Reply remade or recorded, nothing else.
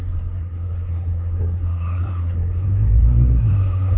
remade